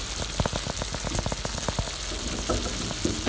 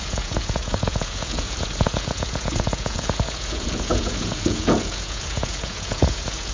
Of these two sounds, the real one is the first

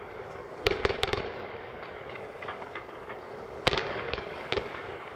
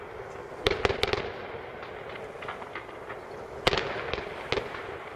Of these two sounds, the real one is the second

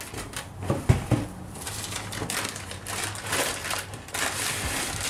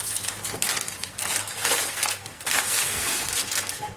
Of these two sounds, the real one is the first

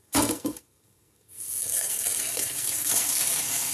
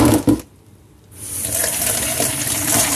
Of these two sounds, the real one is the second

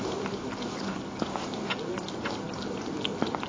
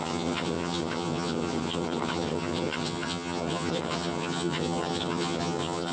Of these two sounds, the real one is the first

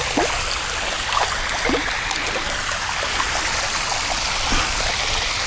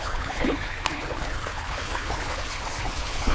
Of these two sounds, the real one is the first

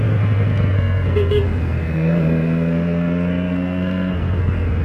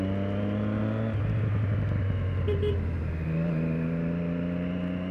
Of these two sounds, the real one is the second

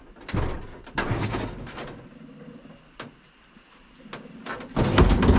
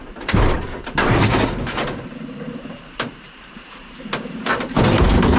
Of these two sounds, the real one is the first